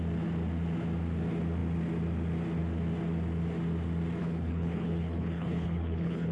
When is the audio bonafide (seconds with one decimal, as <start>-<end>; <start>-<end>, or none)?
0.0-4.2